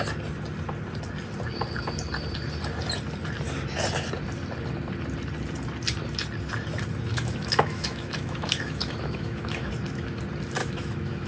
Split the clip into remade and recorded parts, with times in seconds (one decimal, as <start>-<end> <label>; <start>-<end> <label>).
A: 0.0-7.1 recorded; 7.1-9.7 remade; 9.7-10.6 recorded; 10.6-11.3 remade